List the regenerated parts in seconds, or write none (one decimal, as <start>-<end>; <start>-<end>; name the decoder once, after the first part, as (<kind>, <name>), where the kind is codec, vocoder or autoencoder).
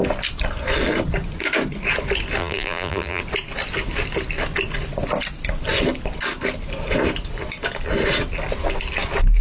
2.4-3.2 (vocoder, BigVGAN v2)